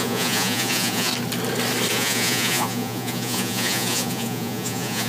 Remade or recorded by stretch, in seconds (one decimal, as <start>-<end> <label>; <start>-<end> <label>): 0.0-1.1 remade; 1.1-1.9 recorded; 1.9-5.1 remade